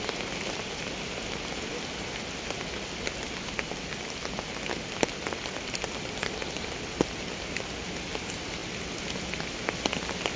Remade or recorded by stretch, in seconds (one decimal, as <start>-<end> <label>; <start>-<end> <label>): 0.0-10.4 recorded